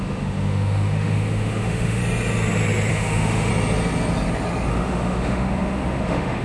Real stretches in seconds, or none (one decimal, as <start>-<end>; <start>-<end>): 2.0-2.9; 3.5-4.7